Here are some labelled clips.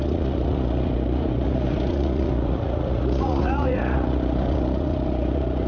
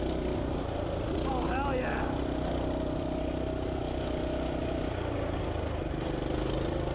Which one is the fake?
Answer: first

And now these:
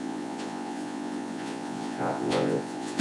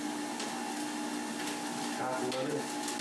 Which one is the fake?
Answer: first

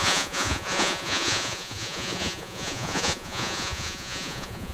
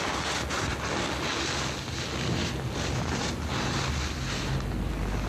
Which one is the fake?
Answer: first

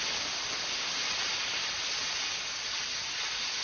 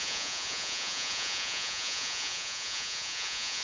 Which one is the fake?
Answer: second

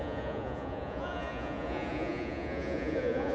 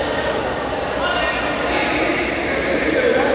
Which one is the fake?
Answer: first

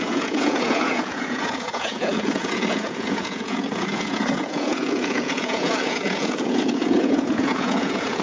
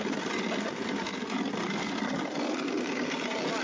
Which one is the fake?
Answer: first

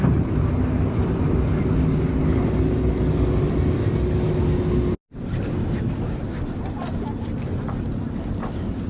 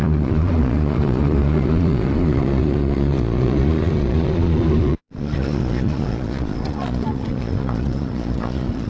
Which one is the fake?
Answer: second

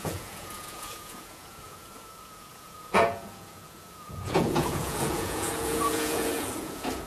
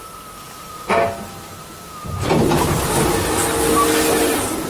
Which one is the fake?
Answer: first